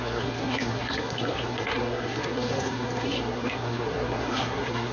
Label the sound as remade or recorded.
remade